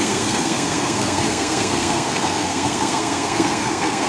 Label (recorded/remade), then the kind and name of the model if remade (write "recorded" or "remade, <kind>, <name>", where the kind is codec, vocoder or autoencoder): remade, codec, SNAC